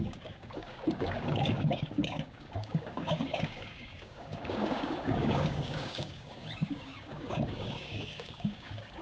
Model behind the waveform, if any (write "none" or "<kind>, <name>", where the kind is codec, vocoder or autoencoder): codec, DAC